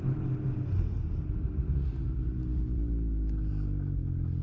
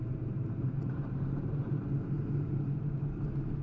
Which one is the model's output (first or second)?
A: second